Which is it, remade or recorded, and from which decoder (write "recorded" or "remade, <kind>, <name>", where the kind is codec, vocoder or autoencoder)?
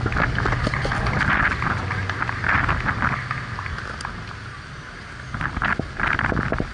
recorded